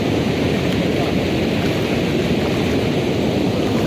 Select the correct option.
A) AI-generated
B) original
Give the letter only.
B